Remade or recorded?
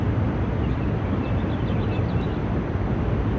recorded